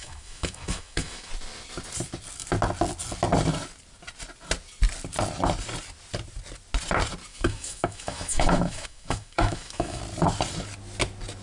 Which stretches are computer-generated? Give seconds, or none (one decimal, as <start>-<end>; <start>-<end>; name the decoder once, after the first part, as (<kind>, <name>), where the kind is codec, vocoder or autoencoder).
0.0-1.3 (autoencoder, DAC-VAE); 7.3-10.0